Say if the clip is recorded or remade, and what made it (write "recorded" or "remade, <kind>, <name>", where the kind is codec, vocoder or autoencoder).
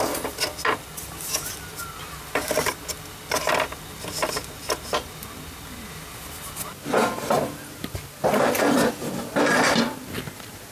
recorded